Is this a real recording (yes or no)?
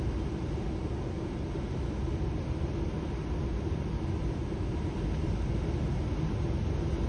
yes